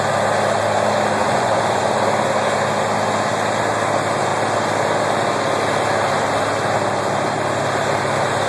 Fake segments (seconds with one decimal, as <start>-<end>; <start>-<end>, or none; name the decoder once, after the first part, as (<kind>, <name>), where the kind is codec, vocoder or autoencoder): 1.2-1.8 (vocoder, Vocos)